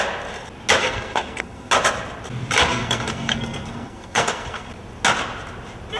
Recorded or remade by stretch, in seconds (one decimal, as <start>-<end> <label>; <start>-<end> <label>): 0.0-0.8 recorded; 0.8-1.7 remade; 1.7-2.7 recorded; 2.7-4.7 remade; 4.7-6.0 recorded